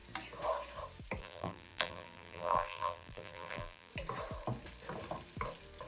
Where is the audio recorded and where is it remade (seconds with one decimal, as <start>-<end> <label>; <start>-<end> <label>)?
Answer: 0.0-1.2 recorded; 1.2-3.9 remade; 3.9-5.9 recorded